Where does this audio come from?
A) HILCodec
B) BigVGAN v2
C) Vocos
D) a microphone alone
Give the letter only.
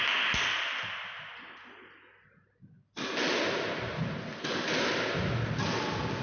D